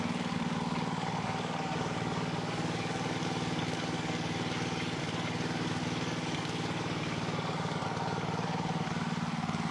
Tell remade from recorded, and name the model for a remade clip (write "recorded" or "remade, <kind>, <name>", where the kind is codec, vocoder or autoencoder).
remade, codec, DAC